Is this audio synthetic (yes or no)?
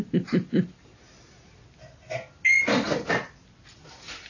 no